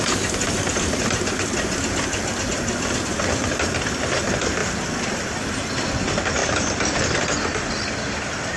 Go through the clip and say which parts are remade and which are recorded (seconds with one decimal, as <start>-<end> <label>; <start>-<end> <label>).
0.0-4.6 recorded; 4.6-5.6 remade; 5.6-6.4 recorded; 6.4-7.0 remade; 7.0-8.6 recorded